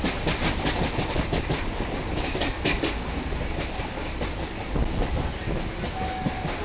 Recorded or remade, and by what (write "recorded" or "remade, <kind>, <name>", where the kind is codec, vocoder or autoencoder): recorded